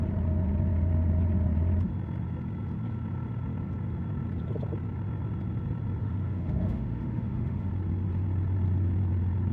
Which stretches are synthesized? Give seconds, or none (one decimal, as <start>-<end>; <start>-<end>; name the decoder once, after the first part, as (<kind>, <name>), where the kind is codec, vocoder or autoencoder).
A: 6.0-7.7 (autoencoder, DAC-VAE)